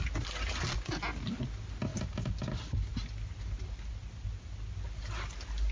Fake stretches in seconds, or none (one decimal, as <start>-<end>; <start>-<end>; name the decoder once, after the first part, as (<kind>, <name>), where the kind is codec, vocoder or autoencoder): none